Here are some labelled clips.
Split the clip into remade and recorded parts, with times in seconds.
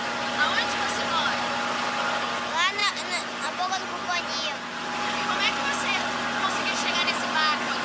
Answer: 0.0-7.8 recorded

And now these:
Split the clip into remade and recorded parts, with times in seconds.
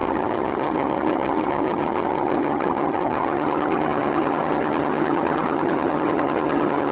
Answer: 0.0-6.9 remade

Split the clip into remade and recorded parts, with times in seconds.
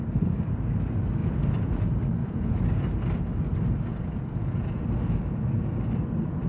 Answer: 0.0-1.2 recorded; 1.2-1.8 remade; 1.8-2.2 recorded; 2.2-2.7 remade; 2.7-3.9 recorded; 3.9-4.9 remade; 4.9-6.5 recorded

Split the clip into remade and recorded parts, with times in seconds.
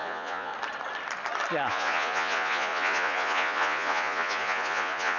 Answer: 0.0-0.5 remade; 0.5-1.7 recorded; 1.7-5.2 remade